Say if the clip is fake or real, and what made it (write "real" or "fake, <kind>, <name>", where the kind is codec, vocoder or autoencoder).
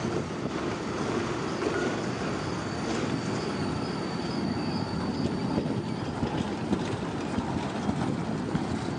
real